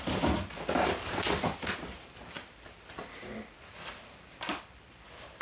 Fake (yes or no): yes